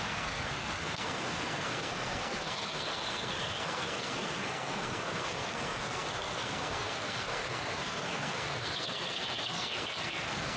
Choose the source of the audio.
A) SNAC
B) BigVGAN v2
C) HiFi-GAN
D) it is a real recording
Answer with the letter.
A